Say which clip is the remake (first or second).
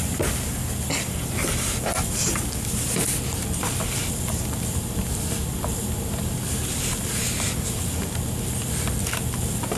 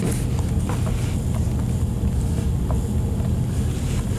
first